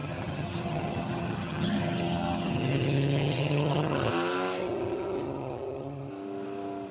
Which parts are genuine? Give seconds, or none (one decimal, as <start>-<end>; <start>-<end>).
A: 4.1-4.6; 6.1-6.9